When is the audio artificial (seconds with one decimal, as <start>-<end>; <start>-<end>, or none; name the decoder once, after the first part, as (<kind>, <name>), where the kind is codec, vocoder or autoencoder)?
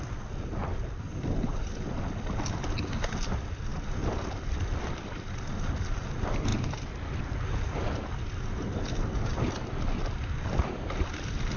0.6-1.3 (vocoder, BigVGAN v2); 3.7-4.7